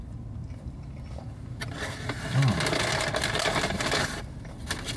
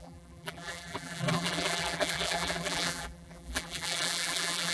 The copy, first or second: second